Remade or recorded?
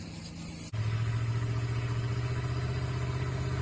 recorded